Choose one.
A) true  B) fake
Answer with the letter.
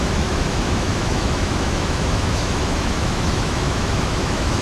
B